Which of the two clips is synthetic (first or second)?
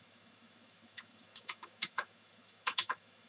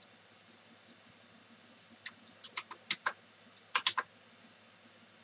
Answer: first